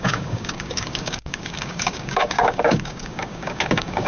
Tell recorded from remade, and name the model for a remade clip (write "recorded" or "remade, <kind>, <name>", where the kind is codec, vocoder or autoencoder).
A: remade, codec, DAC